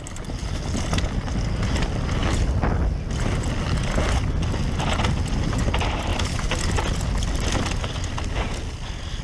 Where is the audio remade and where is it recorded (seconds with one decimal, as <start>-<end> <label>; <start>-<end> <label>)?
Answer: 0.0-9.2 recorded